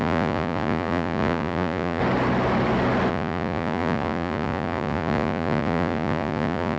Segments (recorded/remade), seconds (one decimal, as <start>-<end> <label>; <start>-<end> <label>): 0.0-2.0 remade; 2.0-3.1 recorded; 3.1-6.8 remade